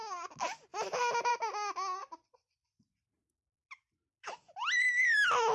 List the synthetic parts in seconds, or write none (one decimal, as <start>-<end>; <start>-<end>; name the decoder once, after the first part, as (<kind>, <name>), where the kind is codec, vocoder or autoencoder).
2.0-5.5 (vocoder, BigVGAN v2)